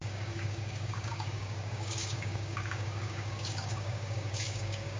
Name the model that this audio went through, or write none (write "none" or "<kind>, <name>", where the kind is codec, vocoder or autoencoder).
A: codec, DAC